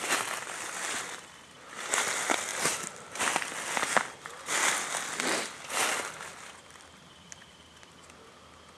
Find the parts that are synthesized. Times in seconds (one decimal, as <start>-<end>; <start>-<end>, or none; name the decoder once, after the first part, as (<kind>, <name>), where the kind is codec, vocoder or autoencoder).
none